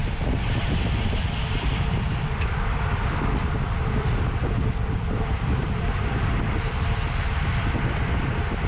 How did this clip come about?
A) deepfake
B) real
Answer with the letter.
A